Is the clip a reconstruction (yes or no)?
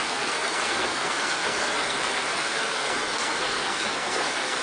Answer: yes